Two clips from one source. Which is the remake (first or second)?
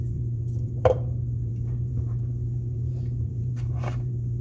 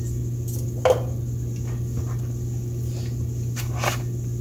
first